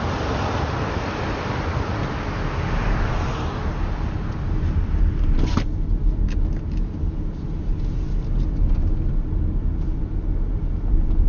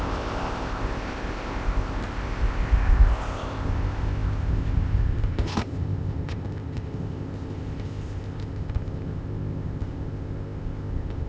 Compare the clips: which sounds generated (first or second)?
second